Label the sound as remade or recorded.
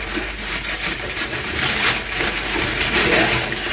remade